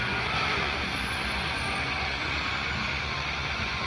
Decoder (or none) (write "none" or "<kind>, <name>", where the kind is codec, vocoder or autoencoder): vocoder, Vocos